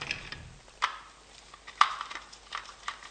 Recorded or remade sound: recorded